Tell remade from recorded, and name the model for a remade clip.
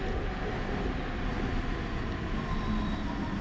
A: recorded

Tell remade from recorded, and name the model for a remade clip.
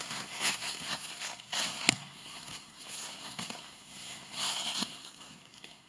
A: remade, codec, SNAC